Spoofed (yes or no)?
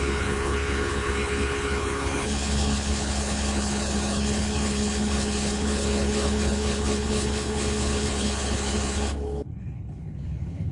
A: yes